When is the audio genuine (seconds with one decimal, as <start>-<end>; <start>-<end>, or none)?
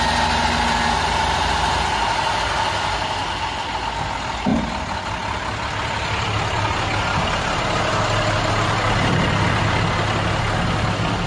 0.0-11.3